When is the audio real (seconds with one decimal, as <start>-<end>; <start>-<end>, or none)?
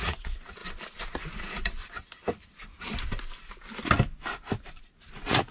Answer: 0.6-1.2; 1.8-4.8